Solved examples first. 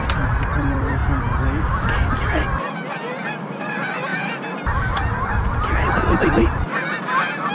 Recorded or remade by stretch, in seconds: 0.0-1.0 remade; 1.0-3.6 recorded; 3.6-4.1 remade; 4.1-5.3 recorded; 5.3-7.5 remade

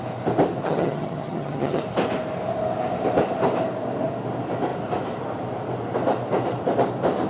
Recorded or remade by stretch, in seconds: 0.0-0.6 recorded; 0.6-1.8 remade; 1.8-7.3 recorded

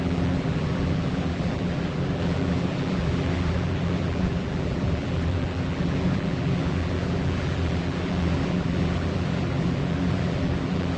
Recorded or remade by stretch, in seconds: 0.0-11.0 remade

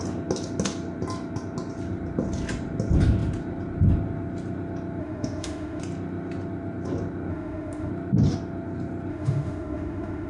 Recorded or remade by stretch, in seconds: 0.0-5.0 recorded; 5.0-5.8 remade; 5.8-7.3 recorded; 7.3-7.9 remade; 7.9-9.1 recorded; 9.1-10.3 remade

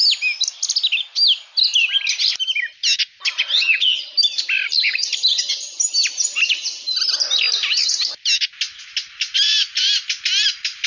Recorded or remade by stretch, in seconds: 0.0-3.5 recorded; 3.5-4.0 remade; 4.0-10.9 recorded

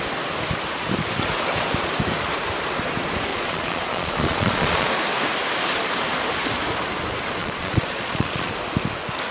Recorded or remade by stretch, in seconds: 0.0-3.3 recorded; 3.3-4.9 remade; 4.9-7.4 recorded; 7.4-8.5 remade; 8.5-9.3 recorded